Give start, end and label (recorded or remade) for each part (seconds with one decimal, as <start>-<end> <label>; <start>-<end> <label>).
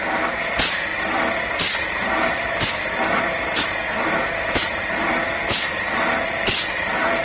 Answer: 0.0-0.9 recorded; 0.9-2.9 remade; 2.9-5.2 recorded; 5.2-7.2 remade